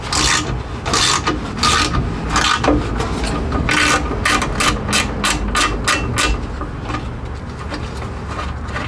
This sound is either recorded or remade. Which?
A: recorded